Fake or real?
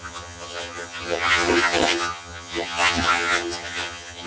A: fake